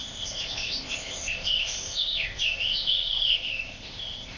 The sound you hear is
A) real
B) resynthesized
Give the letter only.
B